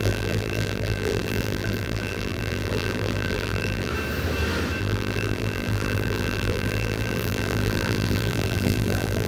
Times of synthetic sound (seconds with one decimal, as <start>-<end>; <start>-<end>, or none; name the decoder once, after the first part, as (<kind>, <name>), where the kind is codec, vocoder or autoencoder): 0.0-3.9 (vocoder, BigVGAN v2); 4.8-9.3